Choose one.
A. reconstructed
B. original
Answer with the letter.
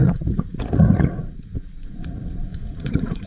A